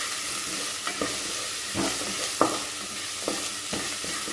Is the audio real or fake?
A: real